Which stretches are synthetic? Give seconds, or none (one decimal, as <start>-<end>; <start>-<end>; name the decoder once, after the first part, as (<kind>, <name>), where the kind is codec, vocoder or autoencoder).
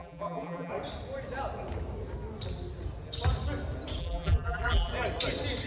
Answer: 0.0-0.7 (vocoder, BigVGAN v2); 4.0-4.9